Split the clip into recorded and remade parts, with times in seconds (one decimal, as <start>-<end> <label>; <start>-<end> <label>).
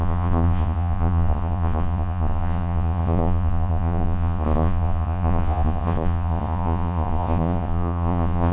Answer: 0.0-8.5 remade